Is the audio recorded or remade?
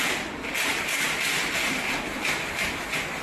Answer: recorded